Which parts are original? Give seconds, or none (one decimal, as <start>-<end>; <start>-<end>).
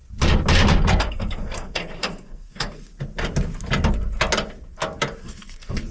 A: 0.0-1.0; 2.9-5.2